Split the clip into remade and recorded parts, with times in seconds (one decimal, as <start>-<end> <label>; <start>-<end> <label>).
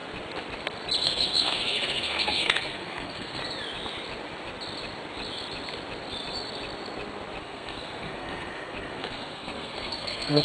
0.0-1.0 recorded; 1.0-3.4 remade; 3.4-7.4 recorded; 7.4-10.4 remade